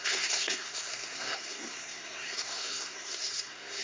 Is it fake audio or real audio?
fake